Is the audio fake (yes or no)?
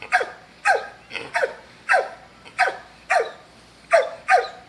no